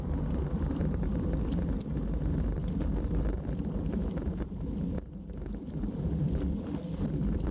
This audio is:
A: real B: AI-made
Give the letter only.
B